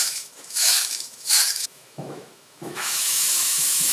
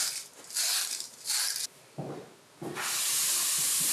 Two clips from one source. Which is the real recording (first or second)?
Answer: second